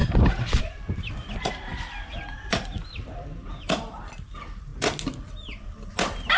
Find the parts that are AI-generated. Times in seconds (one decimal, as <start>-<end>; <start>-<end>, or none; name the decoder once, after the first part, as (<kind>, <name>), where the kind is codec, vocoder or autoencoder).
0.6-4.7 (vocoder, BigVGAN v2); 5.2-6.4